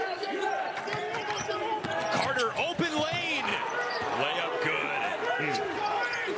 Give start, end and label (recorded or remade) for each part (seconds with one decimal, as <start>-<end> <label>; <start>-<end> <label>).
0.0-0.5 remade; 0.5-6.4 recorded